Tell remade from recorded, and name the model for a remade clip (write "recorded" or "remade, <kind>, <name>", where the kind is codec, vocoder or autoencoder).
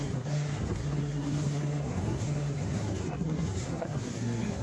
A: remade, codec, SNAC